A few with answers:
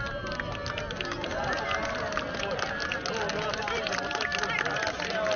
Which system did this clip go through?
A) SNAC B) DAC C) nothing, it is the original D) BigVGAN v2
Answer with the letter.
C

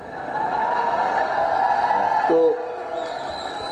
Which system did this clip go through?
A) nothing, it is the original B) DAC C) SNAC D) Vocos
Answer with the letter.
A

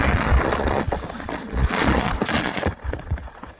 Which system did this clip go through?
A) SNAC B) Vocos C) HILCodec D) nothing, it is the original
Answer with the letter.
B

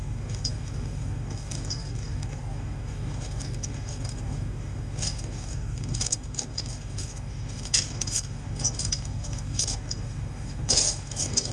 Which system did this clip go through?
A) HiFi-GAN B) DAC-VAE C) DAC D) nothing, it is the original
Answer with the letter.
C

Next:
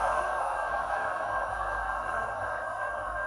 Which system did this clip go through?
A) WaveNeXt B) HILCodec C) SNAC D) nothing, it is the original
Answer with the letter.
C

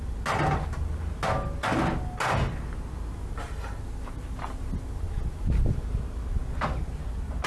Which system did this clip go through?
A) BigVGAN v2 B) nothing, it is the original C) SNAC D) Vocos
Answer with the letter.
B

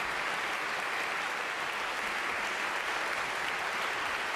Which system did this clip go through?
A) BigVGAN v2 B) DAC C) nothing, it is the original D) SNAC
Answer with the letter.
C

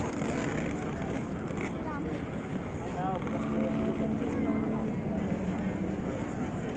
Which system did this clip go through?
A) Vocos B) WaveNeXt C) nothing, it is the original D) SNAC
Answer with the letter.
C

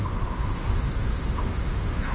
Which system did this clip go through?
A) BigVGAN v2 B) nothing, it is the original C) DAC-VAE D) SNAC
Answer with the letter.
C